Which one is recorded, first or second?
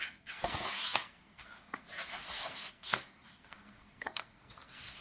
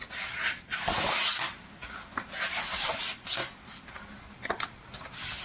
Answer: second